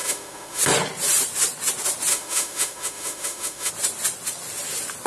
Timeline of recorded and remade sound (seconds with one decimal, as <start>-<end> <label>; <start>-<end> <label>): 0.0-0.6 remade; 0.6-2.1 recorded; 2.1-3.7 remade; 3.7-5.1 recorded